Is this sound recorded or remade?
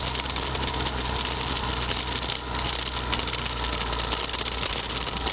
recorded